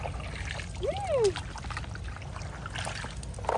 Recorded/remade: recorded